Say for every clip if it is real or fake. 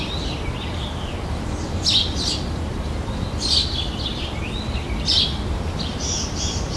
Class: real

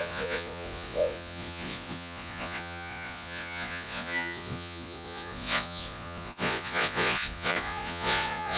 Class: fake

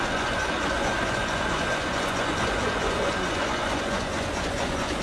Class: fake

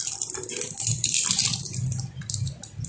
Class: real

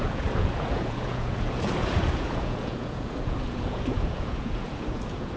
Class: fake